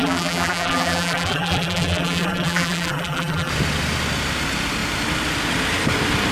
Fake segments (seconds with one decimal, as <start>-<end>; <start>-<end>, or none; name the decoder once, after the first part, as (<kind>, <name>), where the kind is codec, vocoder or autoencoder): 0.0-3.5 (vocoder, BigVGAN v2)